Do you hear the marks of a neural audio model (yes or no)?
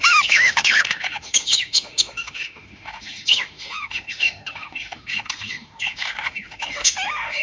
yes